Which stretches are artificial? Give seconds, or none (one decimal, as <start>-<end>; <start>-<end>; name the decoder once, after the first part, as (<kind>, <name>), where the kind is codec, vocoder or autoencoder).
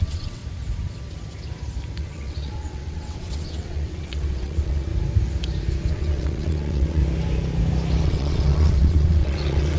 0.0-0.4 (vocoder, WaveNeXt); 2.0-4.9; 5.9-7.0; 8.0-9.8